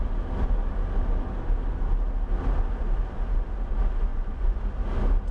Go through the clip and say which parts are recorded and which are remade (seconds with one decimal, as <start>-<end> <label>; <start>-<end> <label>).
0.0-4.1 recorded; 4.1-4.6 remade; 4.6-5.3 recorded